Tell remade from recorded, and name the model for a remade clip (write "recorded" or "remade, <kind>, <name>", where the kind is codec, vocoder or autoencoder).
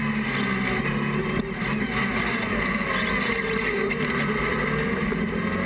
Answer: recorded